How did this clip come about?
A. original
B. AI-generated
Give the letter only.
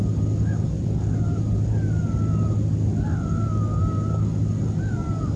A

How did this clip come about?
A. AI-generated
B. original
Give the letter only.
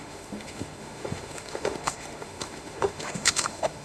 A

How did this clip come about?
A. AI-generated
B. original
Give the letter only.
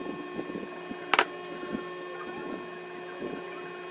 B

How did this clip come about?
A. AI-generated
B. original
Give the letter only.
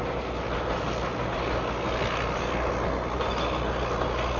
B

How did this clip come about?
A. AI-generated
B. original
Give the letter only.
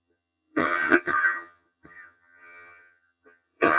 A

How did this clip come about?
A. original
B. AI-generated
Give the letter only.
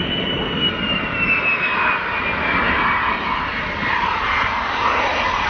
A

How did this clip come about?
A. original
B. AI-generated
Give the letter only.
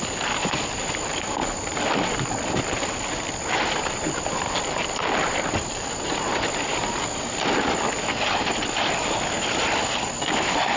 B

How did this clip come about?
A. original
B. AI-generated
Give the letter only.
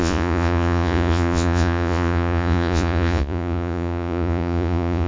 B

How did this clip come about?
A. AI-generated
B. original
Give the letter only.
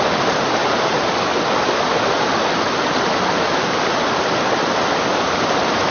B